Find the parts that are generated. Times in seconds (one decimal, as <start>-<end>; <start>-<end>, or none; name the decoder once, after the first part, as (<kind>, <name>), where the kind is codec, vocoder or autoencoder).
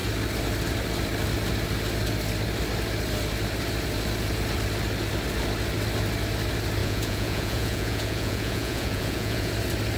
6.8-9.5 (vocoder, Vocos)